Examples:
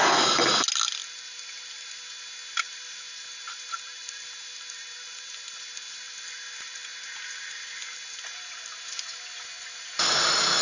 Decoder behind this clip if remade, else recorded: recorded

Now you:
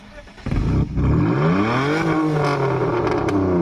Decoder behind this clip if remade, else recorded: recorded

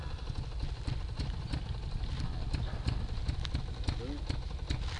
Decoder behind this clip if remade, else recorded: recorded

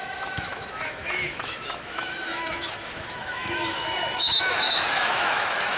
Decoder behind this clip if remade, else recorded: remade, autoencoder, DAC-VAE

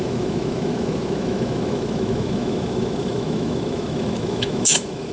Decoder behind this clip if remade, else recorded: remade, autoencoder, DAC-VAE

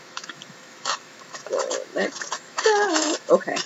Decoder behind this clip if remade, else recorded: remade, autoencoder, DAC-VAE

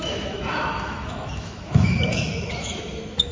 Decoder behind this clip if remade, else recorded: remade, autoencoder, DAC-VAE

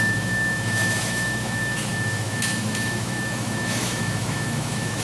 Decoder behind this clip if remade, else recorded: remade, autoencoder, DAC-VAE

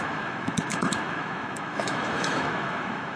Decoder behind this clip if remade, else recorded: remade, autoencoder, DAC-VAE